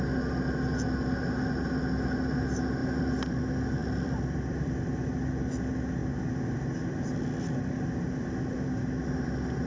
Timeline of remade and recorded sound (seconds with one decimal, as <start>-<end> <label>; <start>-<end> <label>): 0.0-2.8 recorded; 2.8-3.4 remade; 3.4-3.8 recorded; 3.8-4.9 remade; 4.9-9.7 recorded